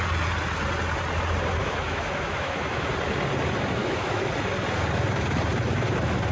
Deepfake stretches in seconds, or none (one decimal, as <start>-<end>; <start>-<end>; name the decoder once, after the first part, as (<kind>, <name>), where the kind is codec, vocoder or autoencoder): 1.6-2.9 (autoencoder, DAC-VAE); 3.8-4.3